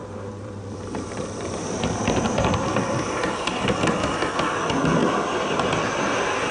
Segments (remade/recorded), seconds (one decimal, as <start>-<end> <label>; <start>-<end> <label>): 0.0-3.8 remade; 3.8-6.5 recorded

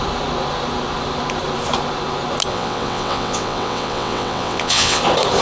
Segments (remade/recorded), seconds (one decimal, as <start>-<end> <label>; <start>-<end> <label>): 0.0-2.5 recorded; 2.5-5.0 remade; 5.0-5.4 recorded

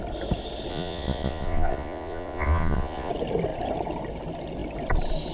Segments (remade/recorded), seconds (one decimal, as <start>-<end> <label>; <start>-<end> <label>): 0.0-0.7 recorded; 0.7-3.1 remade; 3.1-5.3 recorded

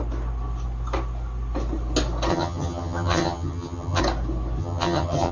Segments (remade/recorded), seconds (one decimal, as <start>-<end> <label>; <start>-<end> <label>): 0.0-2.3 recorded; 2.3-4.0 remade; 4.0-4.6 recorded; 4.6-5.3 remade